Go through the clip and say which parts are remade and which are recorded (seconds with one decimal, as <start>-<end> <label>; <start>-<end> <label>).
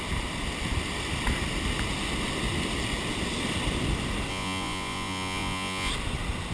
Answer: 0.0-4.3 recorded; 4.3-5.9 remade; 5.9-6.5 recorded